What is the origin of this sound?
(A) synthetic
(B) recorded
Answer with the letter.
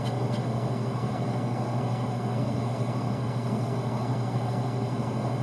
A